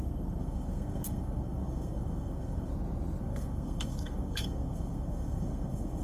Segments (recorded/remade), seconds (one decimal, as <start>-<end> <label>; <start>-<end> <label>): 0.0-2.7 remade; 2.7-3.2 recorded; 3.2-6.0 remade